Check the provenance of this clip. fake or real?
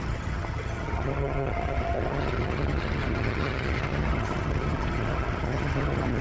fake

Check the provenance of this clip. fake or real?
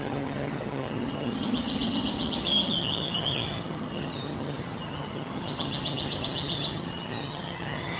fake